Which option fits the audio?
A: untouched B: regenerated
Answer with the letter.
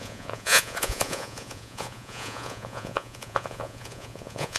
B